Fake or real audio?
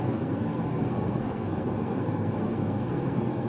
fake